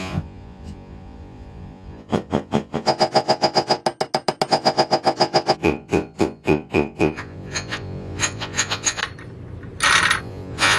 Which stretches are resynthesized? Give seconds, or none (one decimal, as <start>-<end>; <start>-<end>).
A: 0.0-3.8; 4.5-9.0; 10.2-10.8